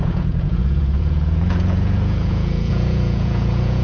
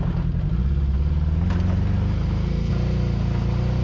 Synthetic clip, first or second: first